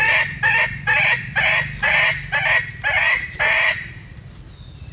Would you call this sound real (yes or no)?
yes